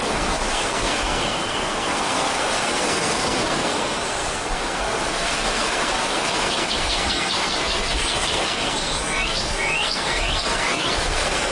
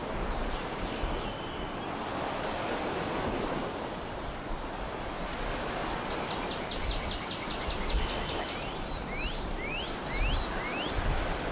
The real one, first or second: second